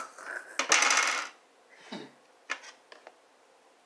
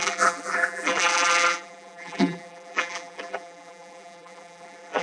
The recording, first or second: first